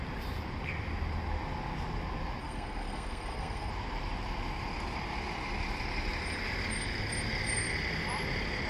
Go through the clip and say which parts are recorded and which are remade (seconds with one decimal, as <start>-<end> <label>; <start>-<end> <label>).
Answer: 0.0-2.4 recorded; 2.4-3.7 remade; 3.7-8.7 recorded